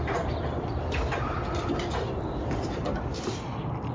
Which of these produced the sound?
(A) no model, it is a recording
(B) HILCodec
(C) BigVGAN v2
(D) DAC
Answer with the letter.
A